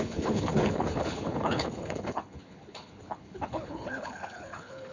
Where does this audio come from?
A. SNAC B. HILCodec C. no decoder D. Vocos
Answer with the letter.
B